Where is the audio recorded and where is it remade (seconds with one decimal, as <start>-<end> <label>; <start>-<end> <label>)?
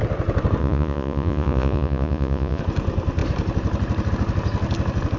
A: 0.0-0.6 recorded; 0.6-2.6 remade; 2.6-5.2 recorded